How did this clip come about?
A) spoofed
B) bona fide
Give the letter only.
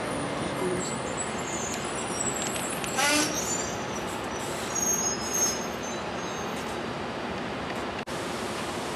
B